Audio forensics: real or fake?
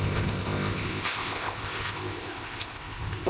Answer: fake